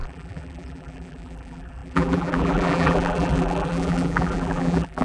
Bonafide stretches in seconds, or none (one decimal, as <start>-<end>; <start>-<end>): none

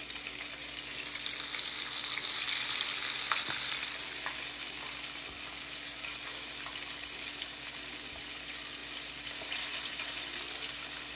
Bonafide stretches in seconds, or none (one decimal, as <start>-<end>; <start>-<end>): 0.0-11.2

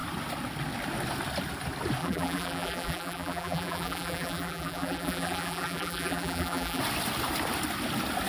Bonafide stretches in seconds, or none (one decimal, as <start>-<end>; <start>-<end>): 0.0-2.0; 6.8-8.3

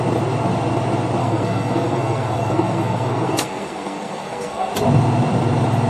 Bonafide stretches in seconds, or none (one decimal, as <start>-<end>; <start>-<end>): 0.0-1.2; 4.7-5.9